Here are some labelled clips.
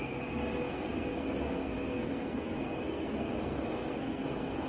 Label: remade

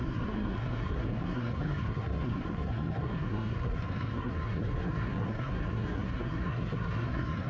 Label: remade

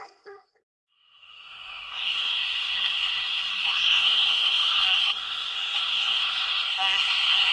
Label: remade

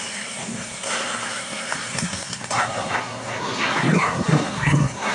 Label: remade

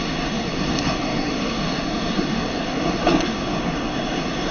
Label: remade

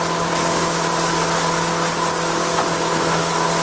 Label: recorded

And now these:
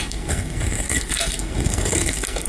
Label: remade